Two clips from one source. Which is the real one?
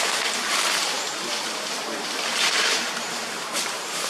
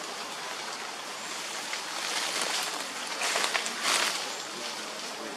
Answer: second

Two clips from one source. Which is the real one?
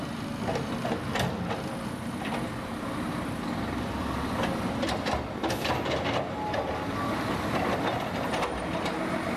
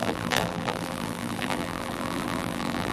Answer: first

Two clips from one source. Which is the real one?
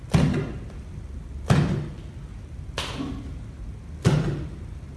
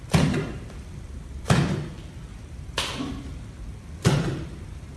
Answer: first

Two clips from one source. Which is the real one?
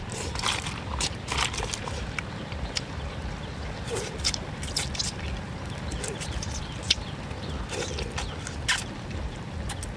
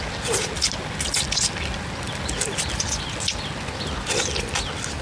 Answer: second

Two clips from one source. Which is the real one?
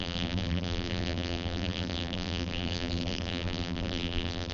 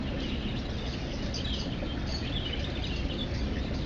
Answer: second